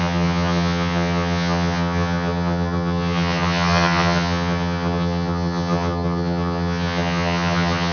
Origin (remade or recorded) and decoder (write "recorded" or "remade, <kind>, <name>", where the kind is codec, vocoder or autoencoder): remade, vocoder, HiFi-GAN